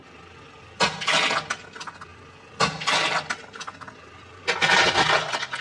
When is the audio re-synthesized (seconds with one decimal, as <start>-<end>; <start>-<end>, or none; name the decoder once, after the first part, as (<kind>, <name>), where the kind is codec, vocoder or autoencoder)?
none